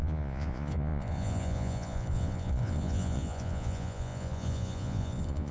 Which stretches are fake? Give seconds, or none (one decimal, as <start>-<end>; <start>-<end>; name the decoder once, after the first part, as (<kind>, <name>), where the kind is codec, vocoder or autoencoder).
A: 0.0-5.5 (vocoder, Vocos)